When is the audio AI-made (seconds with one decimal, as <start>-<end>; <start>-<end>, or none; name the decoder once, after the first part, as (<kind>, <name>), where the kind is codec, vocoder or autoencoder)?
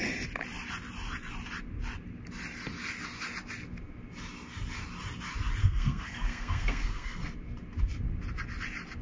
5.6-7.3 (codec, SNAC)